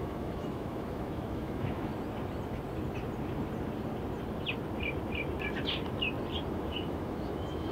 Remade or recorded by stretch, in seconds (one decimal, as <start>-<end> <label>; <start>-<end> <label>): 0.0-1.9 remade; 1.9-6.5 recorded; 6.5-7.7 remade